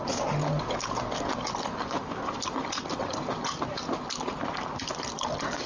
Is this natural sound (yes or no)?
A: yes